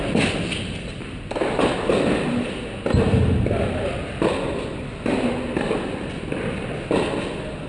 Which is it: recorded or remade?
recorded